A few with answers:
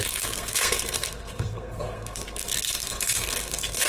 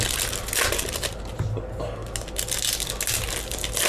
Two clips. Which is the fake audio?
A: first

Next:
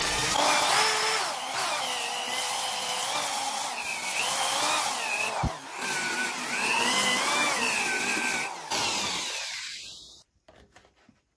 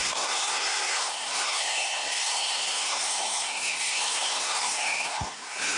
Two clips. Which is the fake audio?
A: second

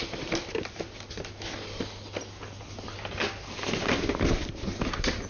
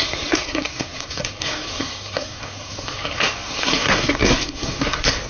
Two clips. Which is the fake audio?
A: second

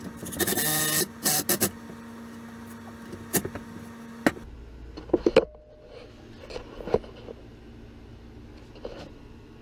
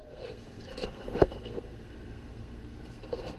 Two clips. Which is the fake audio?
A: second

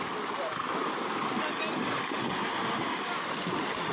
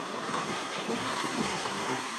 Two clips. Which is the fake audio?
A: second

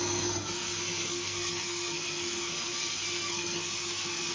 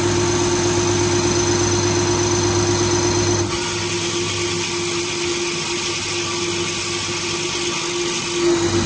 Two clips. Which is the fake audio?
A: first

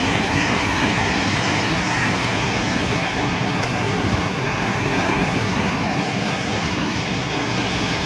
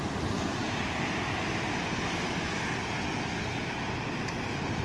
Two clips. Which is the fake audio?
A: first